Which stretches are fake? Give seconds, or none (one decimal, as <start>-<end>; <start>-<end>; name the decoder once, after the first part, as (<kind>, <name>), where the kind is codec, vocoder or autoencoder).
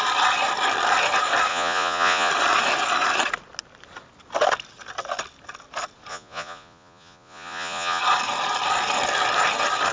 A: 1.5-2.3 (vocoder, Vocos); 6.1-8.0